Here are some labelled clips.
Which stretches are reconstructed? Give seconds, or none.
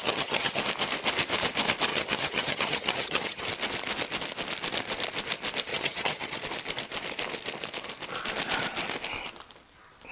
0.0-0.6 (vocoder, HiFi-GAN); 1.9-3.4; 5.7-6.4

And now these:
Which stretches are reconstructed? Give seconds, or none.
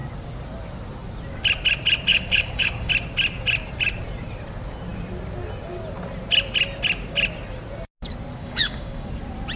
2.1-2.9 (codec, DAC); 8.4-9.1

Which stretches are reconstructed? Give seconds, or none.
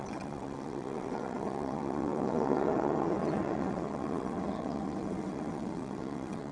0.0-6.5 (vocoder, WaveNeXt)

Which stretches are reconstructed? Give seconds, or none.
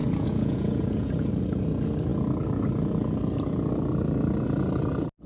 0.0-1.3 (vocoder, Vocos)